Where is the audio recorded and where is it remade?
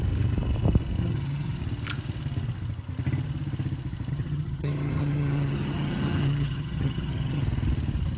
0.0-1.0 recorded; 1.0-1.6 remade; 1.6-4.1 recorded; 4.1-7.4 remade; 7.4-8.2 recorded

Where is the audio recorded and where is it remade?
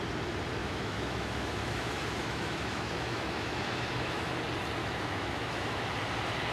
0.0-0.6 recorded; 0.6-4.3 remade; 4.3-4.8 recorded; 4.8-5.8 remade; 5.8-6.5 recorded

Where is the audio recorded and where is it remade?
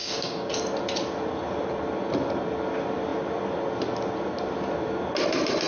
0.0-0.5 remade; 0.5-5.7 recorded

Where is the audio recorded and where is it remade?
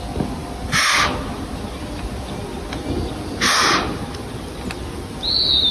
0.0-5.7 recorded